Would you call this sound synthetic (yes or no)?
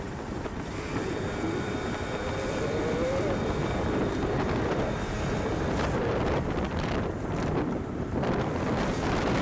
yes